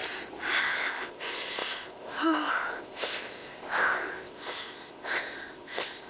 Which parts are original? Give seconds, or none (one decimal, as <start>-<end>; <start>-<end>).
0.0-0.6